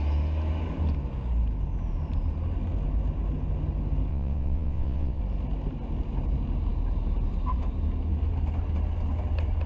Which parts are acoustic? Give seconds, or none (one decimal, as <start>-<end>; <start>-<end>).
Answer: 0.0-4.1; 5.2-9.7